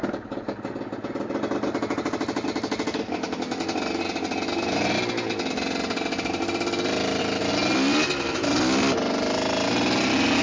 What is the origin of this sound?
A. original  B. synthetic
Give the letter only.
A